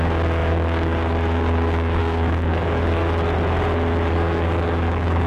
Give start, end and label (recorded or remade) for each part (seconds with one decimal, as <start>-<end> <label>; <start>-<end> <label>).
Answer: 0.0-3.0 remade; 3.0-4.1 recorded; 4.1-5.3 remade